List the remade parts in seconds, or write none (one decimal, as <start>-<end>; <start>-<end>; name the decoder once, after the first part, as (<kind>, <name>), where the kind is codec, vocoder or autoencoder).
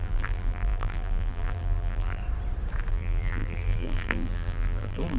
0.0-2.2 (vocoder, BigVGAN v2); 2.9-5.2